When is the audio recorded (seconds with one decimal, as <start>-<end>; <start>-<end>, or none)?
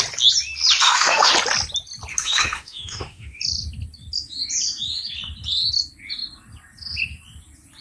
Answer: 0.0-0.8; 1.3-2.1; 3.4-7.8